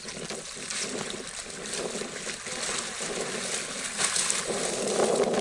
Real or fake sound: real